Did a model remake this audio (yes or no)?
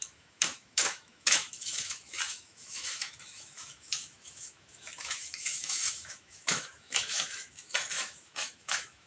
yes